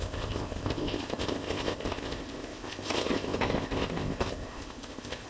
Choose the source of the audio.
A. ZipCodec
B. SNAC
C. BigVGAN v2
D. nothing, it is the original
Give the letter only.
A